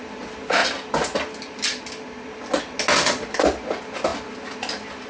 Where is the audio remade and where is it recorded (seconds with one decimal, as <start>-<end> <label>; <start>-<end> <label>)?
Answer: 0.0-5.1 recorded